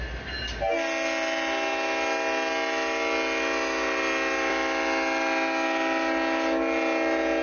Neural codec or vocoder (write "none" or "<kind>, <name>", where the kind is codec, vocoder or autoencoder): none